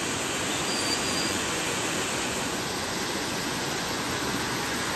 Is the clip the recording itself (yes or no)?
no